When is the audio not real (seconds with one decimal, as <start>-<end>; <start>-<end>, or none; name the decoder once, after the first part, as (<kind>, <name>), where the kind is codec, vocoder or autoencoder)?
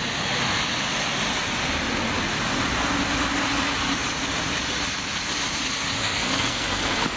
6.0-7.2 (codec, SNAC)